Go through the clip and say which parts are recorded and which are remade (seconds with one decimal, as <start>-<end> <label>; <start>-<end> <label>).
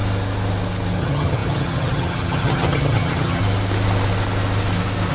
0.0-1.0 recorded; 1.0-3.4 remade; 3.4-5.1 recorded